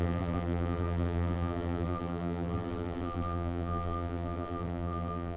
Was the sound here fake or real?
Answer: fake